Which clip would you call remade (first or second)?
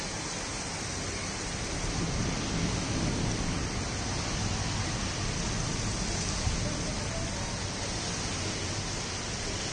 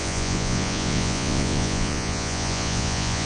second